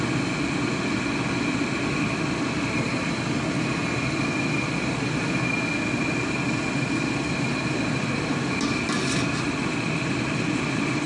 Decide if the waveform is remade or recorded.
recorded